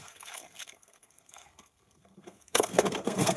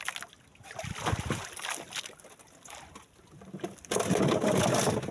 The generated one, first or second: first